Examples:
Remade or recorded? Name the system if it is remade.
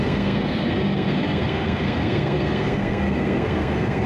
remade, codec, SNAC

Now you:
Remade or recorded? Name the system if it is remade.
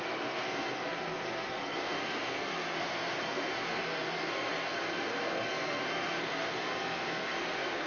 remade, codec, SNAC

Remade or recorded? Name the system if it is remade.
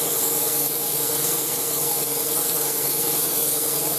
remade, codec, SNAC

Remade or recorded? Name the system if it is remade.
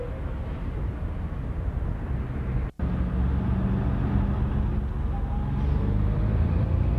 recorded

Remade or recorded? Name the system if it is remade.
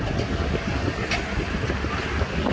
recorded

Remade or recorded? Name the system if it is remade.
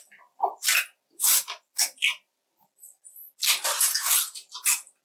recorded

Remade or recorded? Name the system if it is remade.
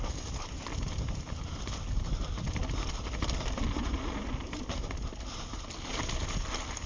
recorded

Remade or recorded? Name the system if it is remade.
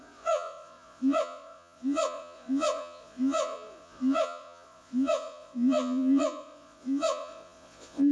remade, vocoder, Vocos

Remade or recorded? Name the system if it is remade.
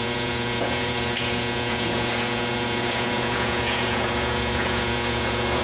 remade, vocoder, Vocos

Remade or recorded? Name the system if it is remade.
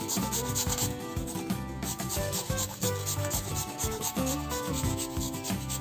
remade, codec, DAC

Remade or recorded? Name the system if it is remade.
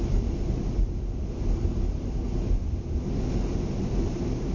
recorded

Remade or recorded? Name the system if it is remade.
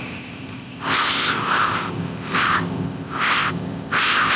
remade, codec, ZipCodec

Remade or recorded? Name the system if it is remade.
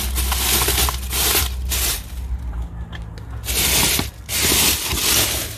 recorded